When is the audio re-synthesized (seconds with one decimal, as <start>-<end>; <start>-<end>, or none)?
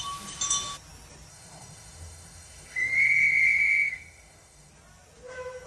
1.3-4.7